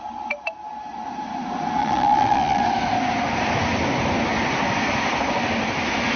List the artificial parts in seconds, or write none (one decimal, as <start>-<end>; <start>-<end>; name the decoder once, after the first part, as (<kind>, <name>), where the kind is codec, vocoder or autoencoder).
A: 1.8-2.6 (vocoder, Vocos)